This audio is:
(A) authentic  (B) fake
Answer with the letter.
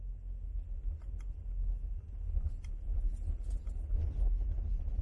A